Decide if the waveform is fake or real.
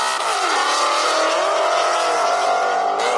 real